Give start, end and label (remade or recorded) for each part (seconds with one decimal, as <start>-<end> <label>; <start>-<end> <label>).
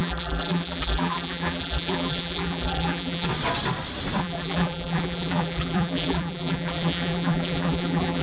0.0-3.3 remade; 3.3-4.2 recorded; 4.2-8.2 remade